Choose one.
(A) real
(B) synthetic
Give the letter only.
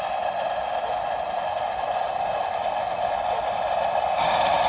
A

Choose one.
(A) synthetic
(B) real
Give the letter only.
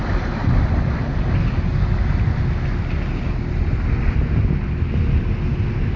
B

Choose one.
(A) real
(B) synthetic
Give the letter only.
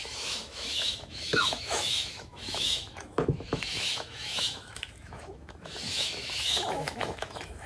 B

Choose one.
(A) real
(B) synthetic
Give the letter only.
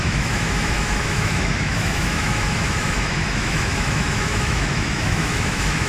B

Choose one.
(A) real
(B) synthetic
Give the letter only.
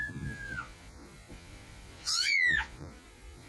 B